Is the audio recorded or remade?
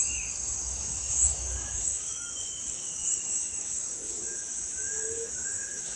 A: remade